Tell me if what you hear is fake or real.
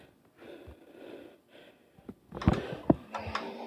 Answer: real